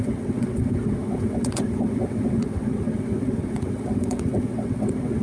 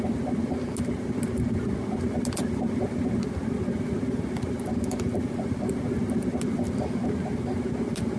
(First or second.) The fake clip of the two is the first